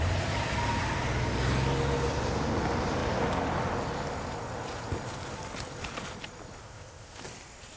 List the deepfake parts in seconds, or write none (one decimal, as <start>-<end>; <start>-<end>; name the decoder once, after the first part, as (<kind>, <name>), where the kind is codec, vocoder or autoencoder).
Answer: 6.6-7.2 (codec, ZipCodec)